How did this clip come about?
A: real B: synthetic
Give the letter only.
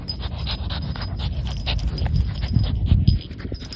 A